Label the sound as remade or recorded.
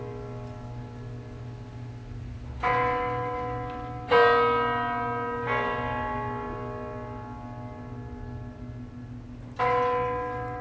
recorded